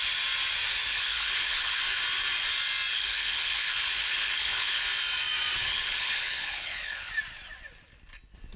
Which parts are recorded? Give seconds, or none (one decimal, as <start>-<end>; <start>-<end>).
0.0-0.9; 1.8-2.9; 4.8-5.7; 7.1-8.6